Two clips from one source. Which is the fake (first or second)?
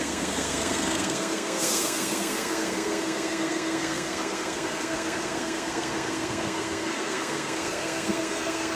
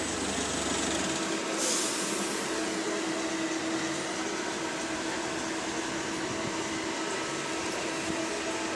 first